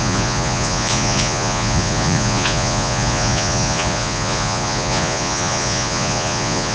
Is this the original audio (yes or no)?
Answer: no